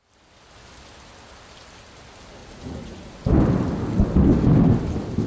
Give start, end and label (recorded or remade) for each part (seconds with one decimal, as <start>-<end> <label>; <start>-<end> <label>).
0.0-2.4 recorded; 2.4-3.1 remade; 3.1-5.3 recorded